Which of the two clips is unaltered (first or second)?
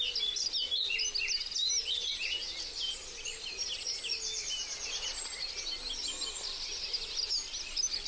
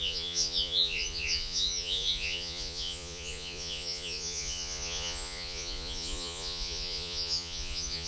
first